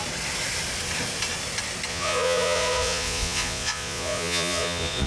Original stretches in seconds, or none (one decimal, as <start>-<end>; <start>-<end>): 0.0-1.9